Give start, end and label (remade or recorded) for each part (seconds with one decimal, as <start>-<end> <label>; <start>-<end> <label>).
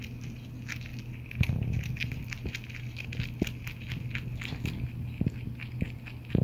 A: 0.0-6.4 recorded